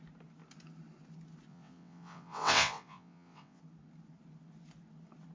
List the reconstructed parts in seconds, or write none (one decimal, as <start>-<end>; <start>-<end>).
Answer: 1.5-3.6

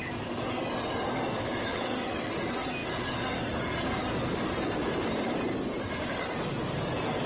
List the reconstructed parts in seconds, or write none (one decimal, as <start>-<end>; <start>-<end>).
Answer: 1.7-2.3

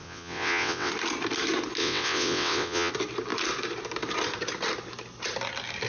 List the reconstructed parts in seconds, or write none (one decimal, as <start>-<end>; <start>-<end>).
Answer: 0.0-0.9; 1.8-2.9

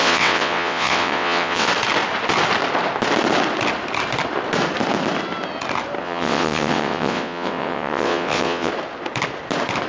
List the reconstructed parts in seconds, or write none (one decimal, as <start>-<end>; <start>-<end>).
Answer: 0.0-1.7; 6.0-8.7

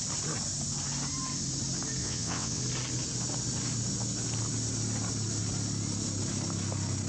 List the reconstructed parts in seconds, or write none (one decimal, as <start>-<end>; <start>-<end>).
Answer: 2.0-2.6

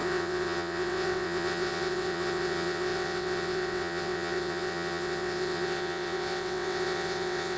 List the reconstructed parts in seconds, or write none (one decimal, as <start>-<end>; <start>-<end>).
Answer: 0.0-7.6

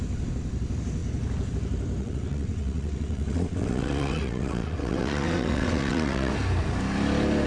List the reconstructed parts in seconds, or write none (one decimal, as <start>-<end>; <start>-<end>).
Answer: 2.0-6.3